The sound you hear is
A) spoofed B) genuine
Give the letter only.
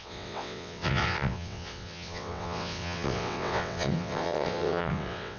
A